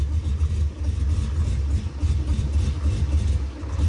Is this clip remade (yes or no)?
no